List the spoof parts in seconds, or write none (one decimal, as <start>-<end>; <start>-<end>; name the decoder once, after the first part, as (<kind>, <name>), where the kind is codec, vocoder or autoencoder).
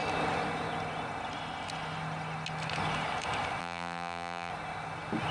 3.6-4.5 (vocoder, BigVGAN v2)